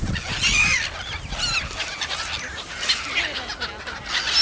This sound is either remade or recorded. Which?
recorded